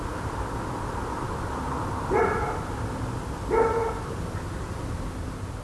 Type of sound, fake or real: real